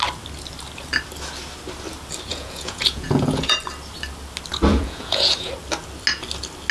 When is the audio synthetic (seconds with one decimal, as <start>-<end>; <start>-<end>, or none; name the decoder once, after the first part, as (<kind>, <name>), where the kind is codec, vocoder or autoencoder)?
2.3-3.6 (vocoder, Vocos); 4.7-5.5